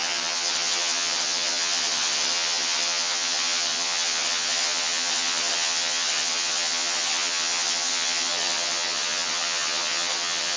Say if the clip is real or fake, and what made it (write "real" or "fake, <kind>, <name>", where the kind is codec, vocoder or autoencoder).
fake, vocoder, HiFi-GAN